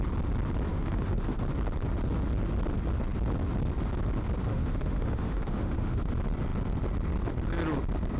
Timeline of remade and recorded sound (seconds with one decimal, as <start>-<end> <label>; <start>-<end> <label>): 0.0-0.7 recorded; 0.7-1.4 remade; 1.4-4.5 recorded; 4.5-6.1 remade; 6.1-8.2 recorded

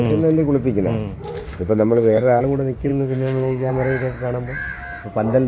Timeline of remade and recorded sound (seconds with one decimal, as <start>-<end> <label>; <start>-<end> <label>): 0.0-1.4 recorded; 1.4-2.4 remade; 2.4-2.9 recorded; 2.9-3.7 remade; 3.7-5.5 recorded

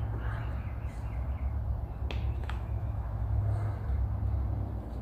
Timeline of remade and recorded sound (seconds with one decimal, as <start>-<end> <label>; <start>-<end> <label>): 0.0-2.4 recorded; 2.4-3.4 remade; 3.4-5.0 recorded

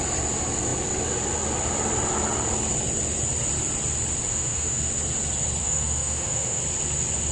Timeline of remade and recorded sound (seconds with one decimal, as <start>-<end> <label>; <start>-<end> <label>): 0.0-4.3 recorded; 4.3-4.9 remade; 4.9-5.6 recorded; 5.6-6.6 remade; 6.6-7.3 recorded